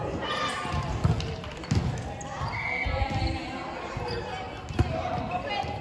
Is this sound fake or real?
real